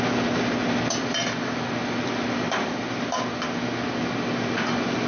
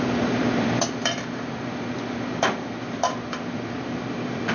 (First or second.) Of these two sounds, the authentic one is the first